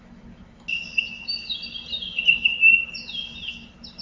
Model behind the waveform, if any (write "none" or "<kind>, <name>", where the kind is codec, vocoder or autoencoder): none